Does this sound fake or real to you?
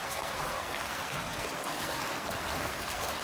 fake